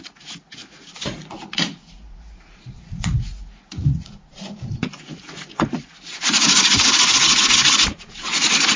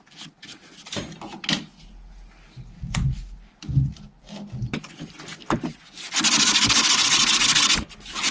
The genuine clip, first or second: second